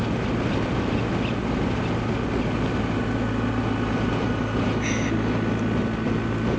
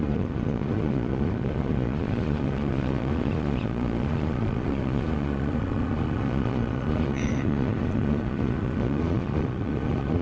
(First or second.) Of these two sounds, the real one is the first